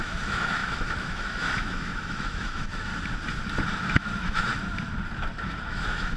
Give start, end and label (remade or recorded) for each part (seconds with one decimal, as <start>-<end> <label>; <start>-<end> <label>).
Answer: 0.0-2.9 remade; 2.9-3.7 recorded; 3.7-4.5 remade; 4.5-5.5 recorded; 5.5-6.2 remade